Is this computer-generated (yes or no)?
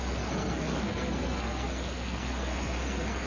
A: yes